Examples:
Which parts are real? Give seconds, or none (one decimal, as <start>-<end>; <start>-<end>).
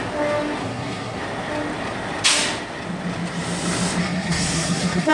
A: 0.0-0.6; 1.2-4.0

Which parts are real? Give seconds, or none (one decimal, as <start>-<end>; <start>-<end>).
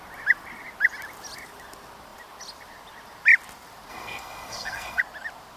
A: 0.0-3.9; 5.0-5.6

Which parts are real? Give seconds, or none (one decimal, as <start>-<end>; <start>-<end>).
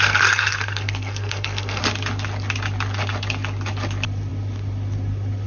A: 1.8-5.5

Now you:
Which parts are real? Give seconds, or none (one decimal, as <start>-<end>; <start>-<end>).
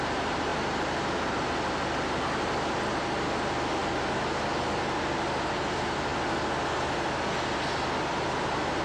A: 0.0-8.8